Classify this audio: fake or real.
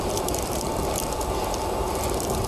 real